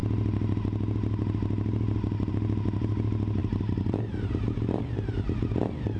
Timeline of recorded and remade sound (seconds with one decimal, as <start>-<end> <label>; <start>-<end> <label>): 0.0-3.4 recorded; 3.4-4.8 remade; 4.8-6.0 recorded